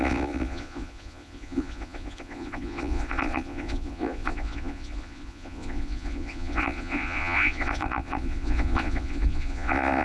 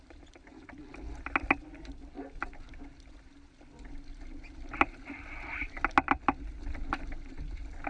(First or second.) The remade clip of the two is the first